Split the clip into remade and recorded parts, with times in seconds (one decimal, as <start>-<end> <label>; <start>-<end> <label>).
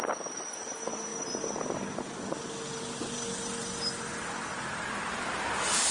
0.0-5.9 recorded